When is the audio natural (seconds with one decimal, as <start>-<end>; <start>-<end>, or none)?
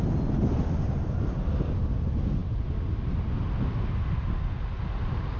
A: 0.0-5.4